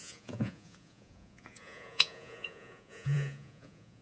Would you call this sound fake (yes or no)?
yes